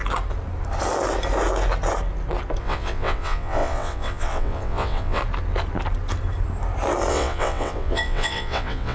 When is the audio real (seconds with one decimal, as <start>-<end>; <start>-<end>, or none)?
0.0-2.6; 5.2-7.1